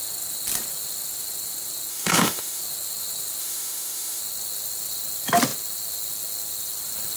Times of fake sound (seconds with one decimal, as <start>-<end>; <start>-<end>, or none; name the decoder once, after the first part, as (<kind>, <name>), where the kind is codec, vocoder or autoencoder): 1.9-2.6 (autoencoder, DAC-VAE); 3.4-4.2